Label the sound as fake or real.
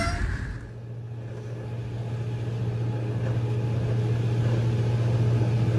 real